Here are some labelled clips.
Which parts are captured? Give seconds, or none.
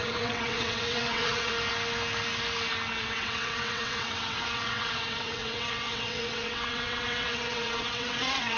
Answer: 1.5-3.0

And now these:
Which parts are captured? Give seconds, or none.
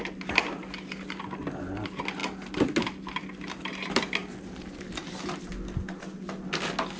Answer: 0.0-7.0